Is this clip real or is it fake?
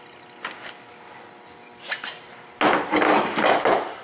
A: real